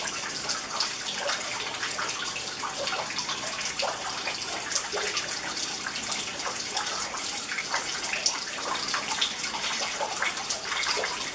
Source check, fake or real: real